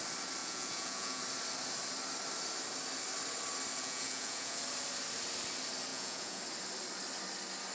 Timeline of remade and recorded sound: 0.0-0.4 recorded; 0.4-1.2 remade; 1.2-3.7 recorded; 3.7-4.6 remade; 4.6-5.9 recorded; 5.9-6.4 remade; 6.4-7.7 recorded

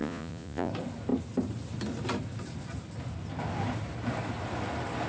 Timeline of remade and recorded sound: 0.0-0.7 remade; 0.7-5.1 recorded